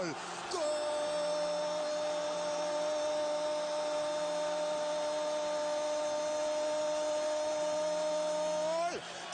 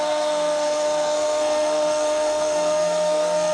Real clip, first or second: first